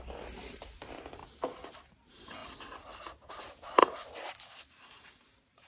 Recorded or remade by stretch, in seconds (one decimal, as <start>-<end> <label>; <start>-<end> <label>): 0.0-1.2 remade; 1.2-1.9 recorded; 1.9-2.4 remade; 2.4-3.4 recorded; 3.4-3.8 remade; 3.8-4.7 recorded; 4.7-5.7 remade